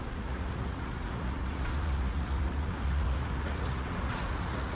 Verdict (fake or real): fake